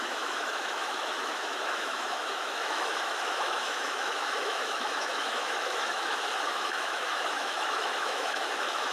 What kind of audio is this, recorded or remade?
remade